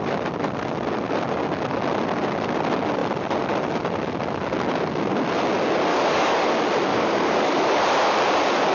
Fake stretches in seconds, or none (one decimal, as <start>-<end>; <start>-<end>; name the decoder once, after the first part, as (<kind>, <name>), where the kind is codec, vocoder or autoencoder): 5.9-6.5 (codec, DAC); 6.9-7.8